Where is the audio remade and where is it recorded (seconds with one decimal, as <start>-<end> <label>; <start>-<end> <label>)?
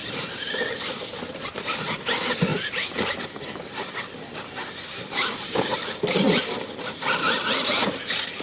0.0-1.5 remade; 1.5-5.0 recorded; 5.0-6.2 remade; 6.2-8.4 recorded